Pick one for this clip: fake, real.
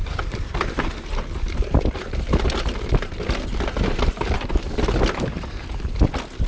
real